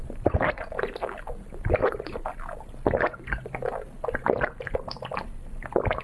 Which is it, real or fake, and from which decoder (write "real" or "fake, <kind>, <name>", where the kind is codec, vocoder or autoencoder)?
real